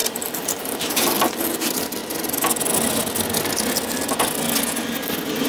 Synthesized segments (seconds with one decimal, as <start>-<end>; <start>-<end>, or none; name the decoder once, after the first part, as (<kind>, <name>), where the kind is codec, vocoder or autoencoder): 0.0-2.0 (vocoder, BigVGAN v2)